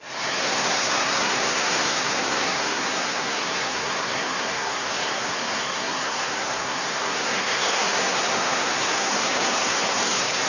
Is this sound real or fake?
fake